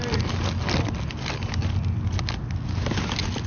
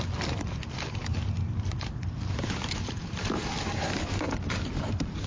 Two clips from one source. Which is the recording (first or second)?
first